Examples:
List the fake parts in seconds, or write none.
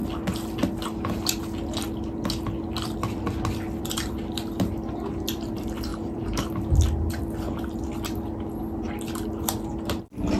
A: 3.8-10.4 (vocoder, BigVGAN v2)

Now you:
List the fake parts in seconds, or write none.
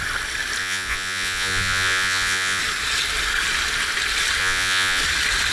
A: 0.6-2.6 (vocoder, Vocos); 4.4-5.0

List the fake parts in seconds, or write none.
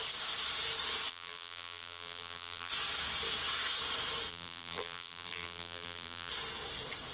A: 1.1-2.7 (vocoder, BigVGAN v2); 4.3-6.3